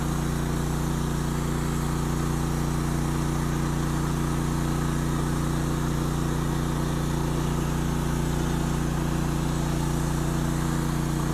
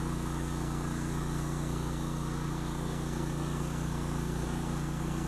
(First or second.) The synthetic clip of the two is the second